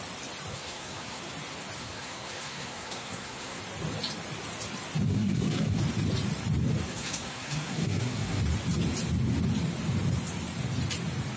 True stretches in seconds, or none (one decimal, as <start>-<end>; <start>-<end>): 0.0-0.5; 1.2-1.8; 3.6-5.1; 5.8-6.9; 8.4-11.4